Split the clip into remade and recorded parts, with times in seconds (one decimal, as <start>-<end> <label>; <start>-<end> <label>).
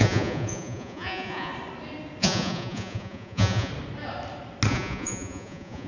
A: 0.0-1.5 remade; 1.5-2.2 recorded; 2.2-3.7 remade; 3.7-4.7 recorded; 4.7-5.9 remade